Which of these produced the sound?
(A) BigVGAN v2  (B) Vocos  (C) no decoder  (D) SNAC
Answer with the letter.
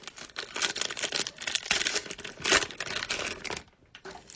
C